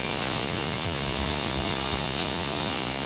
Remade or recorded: remade